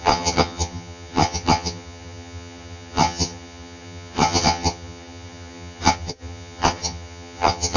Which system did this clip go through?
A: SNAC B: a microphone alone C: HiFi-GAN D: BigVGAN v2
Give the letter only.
C